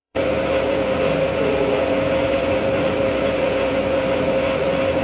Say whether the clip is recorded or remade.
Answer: remade